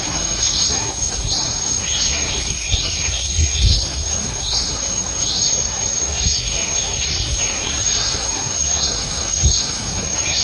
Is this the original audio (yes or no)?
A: no